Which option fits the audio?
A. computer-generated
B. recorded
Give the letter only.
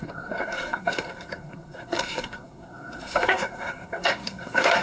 A